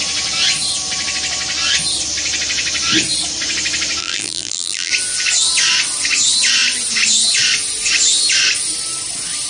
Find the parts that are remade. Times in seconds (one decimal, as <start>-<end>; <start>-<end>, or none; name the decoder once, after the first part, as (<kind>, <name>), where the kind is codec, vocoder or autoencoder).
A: 4.0-4.9 (vocoder, BigVGAN v2)